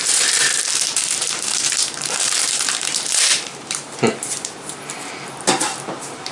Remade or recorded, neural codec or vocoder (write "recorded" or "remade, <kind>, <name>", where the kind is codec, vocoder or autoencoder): remade, vocoder, BigVGAN v2